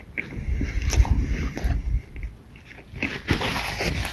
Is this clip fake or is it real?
real